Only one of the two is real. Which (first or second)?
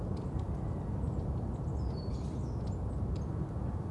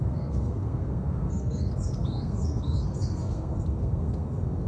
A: first